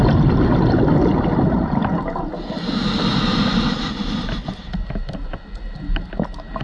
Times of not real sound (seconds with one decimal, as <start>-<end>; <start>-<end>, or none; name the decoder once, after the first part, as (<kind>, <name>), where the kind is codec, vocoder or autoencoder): none